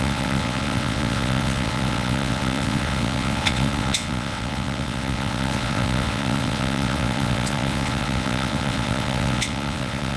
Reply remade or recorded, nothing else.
remade